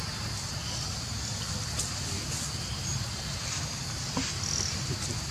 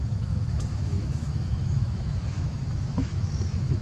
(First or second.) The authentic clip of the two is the first